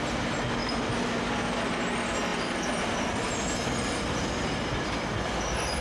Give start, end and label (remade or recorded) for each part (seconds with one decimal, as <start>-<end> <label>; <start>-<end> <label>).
0.0-5.8 recorded